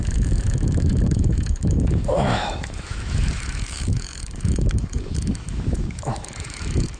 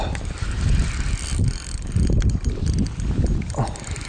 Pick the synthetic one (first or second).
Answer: first